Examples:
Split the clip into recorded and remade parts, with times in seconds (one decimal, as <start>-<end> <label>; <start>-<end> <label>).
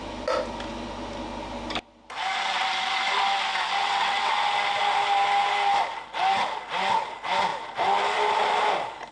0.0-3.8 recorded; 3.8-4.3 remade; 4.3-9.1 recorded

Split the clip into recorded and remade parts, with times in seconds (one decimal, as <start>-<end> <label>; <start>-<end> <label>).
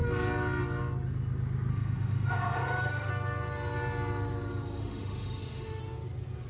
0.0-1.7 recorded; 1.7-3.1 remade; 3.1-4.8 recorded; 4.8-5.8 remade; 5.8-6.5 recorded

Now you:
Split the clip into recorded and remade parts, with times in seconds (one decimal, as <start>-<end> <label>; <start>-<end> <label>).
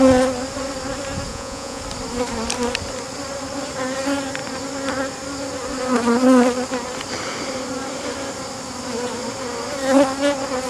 0.0-1.3 recorded; 1.3-1.8 remade; 1.8-10.7 recorded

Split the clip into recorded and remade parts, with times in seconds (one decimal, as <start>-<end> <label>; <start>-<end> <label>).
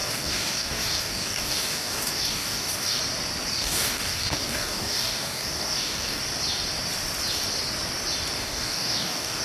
0.0-3.0 remade; 3.0-3.5 recorded; 3.5-6.2 remade; 6.2-8.4 recorded; 8.4-9.4 remade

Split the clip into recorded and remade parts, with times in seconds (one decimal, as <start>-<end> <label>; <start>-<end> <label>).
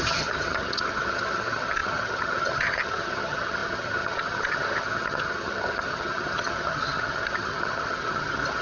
0.0-8.6 remade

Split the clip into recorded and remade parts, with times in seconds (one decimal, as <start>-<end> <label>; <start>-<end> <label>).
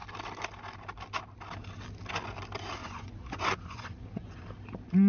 0.0-2.8 recorded; 2.8-4.5 remade; 4.5-5.1 recorded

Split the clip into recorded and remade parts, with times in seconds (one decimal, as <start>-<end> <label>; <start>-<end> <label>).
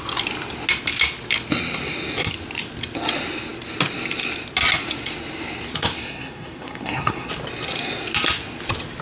0.0-6.0 recorded; 6.0-7.3 remade; 7.3-9.0 recorded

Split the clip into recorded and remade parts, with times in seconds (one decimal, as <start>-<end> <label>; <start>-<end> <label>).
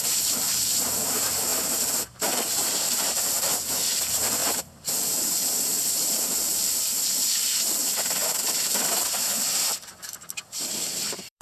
0.0-11.4 remade